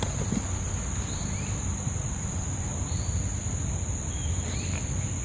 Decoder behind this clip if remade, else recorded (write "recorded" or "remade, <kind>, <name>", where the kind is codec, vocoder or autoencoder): recorded